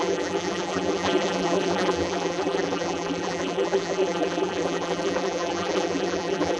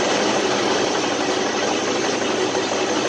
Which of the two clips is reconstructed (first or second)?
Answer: first